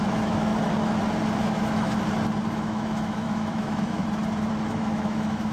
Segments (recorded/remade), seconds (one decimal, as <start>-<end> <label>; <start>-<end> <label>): 0.0-0.5 remade; 0.5-1.4 recorded; 1.4-1.9 remade; 1.9-2.5 recorded; 2.5-4.0 remade; 4.0-4.5 recorded; 4.5-5.5 remade